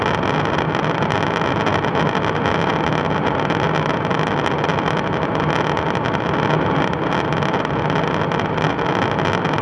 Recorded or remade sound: recorded